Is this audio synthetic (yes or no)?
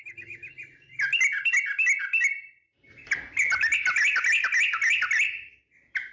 no